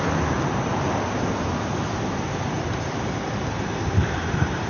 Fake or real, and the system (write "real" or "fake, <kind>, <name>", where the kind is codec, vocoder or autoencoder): real